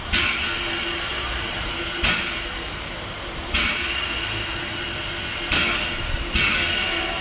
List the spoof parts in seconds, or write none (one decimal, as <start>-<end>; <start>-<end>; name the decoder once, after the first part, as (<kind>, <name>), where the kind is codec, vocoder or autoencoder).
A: 1.1-5.1 (vocoder, BigVGAN v2)